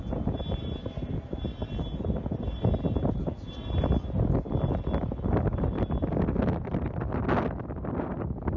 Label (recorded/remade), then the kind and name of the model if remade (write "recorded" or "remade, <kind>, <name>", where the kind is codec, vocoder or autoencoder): recorded